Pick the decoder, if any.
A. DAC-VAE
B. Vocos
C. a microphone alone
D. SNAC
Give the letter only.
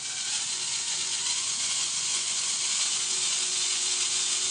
B